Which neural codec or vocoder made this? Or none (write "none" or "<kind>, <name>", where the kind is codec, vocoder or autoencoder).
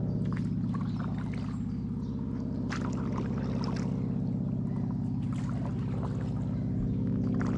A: none